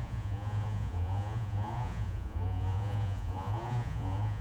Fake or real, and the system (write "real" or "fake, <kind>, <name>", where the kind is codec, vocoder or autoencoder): fake, vocoder, Vocos